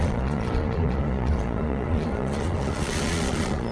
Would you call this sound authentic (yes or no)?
no